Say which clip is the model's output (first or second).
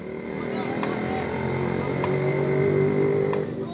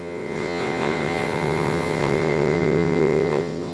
second